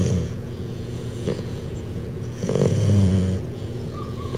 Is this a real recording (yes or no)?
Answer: no